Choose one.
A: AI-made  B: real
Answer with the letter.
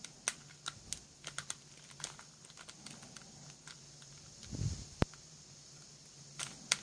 B